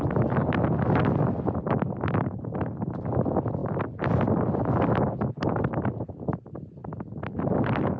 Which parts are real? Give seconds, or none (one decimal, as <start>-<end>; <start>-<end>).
3.6-6.1